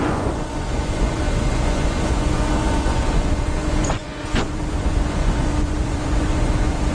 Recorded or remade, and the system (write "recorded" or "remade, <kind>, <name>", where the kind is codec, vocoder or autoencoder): remade, vocoder, Vocos